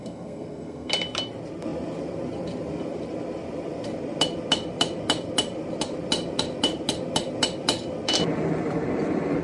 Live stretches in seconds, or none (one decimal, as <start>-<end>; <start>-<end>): 0.9-9.4